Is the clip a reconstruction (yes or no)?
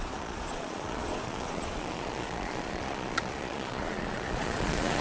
yes